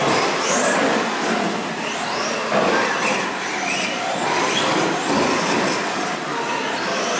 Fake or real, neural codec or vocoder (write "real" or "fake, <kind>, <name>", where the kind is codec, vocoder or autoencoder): real